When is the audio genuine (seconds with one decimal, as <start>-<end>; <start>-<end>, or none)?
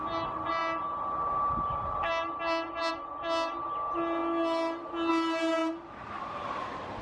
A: 0.0-7.0